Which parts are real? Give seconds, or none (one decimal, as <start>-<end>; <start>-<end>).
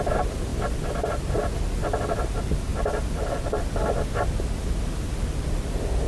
0.0-6.1